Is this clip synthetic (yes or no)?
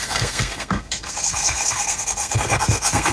yes